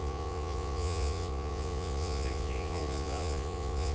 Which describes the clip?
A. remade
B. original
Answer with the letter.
A